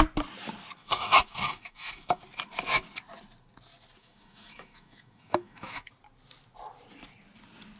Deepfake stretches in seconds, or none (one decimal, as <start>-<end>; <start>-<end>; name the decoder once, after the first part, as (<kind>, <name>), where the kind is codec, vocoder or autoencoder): 0.8-2.2 (autoencoder, DAC-VAE); 4.0-5.9